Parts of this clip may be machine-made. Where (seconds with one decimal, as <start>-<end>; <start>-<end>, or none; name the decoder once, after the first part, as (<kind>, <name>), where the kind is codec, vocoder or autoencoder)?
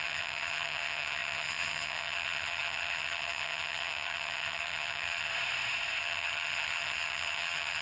0.0-5.3 (vocoder, HiFi-GAN); 6.0-7.8